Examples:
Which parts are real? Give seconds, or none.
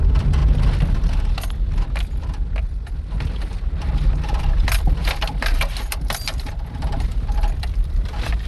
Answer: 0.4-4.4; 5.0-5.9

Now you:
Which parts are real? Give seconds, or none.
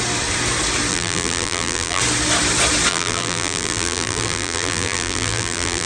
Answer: 0.0-0.9; 2.0-2.9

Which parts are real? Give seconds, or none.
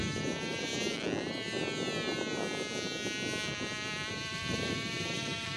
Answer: 0.7-4.1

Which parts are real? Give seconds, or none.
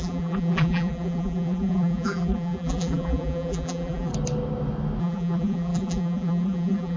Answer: 4.1-5.0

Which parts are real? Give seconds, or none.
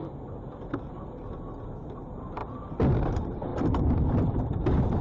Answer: 0.0-3.5; 4.4-5.0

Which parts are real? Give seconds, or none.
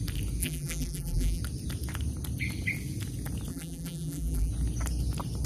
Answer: 0.0-0.4; 1.4-3.5; 4.5-5.5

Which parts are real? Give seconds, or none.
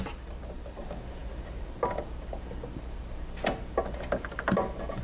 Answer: 0.0-5.0